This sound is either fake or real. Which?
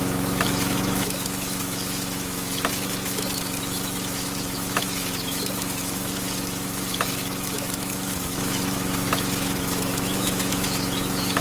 fake